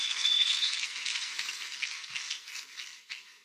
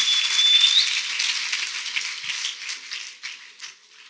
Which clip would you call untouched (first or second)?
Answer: second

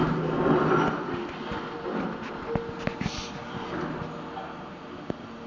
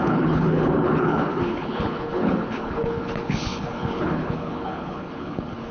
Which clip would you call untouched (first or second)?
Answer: first